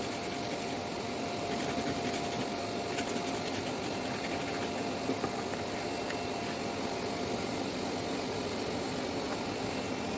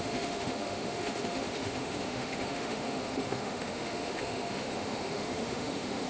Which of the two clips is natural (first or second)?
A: first